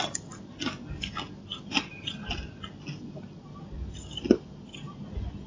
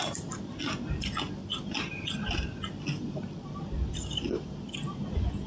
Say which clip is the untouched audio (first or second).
first